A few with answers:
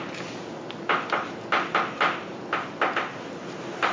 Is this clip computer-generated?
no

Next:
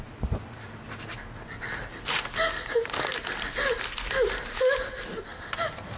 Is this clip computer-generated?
no